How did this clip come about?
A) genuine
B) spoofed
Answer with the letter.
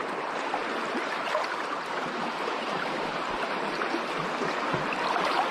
B